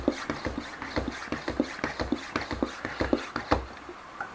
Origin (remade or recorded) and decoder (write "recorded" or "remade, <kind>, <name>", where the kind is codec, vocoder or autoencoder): recorded